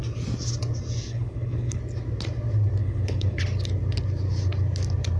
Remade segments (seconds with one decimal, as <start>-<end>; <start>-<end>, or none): 1.1-1.8; 2.8-3.4